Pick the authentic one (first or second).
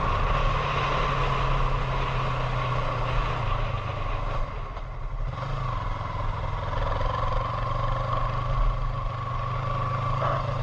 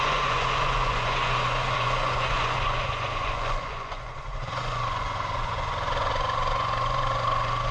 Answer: first